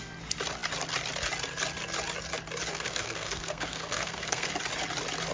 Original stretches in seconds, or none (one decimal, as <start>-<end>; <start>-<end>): 0.0-2.7; 4.5-5.3